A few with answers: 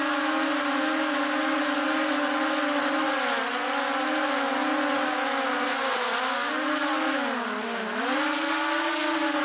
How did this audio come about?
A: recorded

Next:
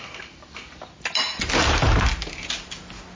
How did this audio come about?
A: recorded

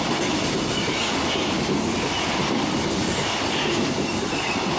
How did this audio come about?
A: recorded